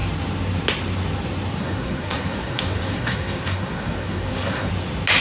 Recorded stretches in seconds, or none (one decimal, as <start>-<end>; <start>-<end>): 0.0-1.6; 4.7-5.2